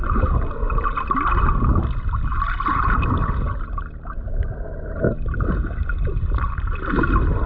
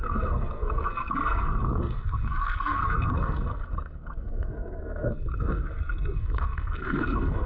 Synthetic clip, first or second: second